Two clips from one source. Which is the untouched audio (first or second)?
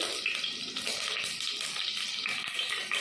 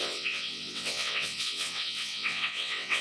first